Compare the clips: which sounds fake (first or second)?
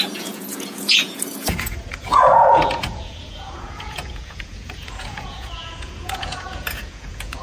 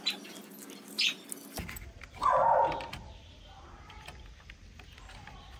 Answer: first